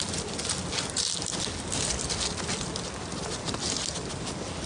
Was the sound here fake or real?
real